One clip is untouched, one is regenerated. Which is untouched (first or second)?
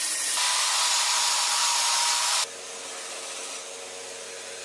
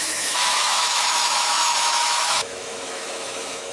first